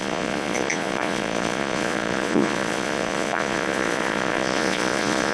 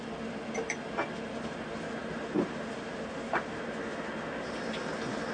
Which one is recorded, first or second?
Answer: second